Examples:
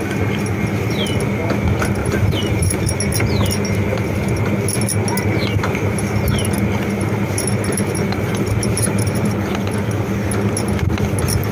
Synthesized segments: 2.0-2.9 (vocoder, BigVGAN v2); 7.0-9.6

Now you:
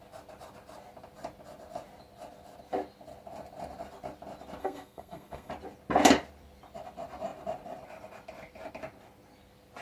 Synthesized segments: 4.6-5.5 (codec, SNAC)

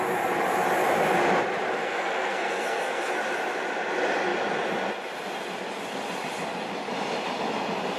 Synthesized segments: 1.8-3.1 (codec, SNAC)

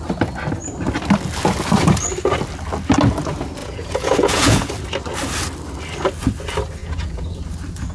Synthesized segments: 3.6-4.7 (vocoder, Vocos); 6.8-7.4

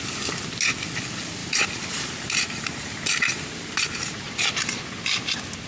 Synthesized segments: 1.4-4.8 (vocoder, BigVGAN v2)